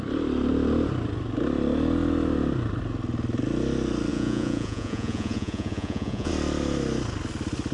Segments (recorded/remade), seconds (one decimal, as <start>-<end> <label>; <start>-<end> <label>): 0.0-4.1 recorded; 4.1-6.3 remade; 6.3-7.7 recorded